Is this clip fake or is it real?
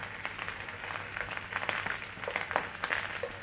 real